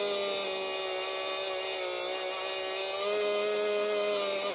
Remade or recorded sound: recorded